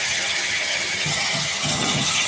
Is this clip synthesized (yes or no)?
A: yes